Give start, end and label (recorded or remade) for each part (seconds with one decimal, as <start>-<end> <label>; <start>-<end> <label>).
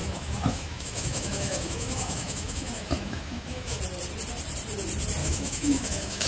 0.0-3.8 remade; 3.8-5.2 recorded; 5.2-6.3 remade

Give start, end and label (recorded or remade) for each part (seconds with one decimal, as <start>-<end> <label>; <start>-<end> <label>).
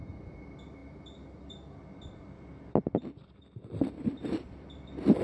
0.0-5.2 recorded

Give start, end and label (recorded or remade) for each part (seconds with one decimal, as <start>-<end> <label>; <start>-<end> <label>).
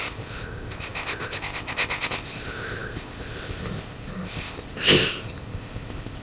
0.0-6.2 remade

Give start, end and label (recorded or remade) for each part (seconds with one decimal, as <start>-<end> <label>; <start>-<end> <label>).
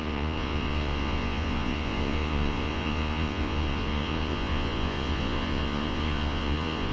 0.0-6.9 remade